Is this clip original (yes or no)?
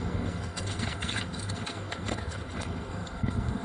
no